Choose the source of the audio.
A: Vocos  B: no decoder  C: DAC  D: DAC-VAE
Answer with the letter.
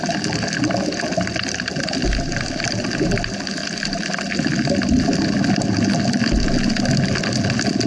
B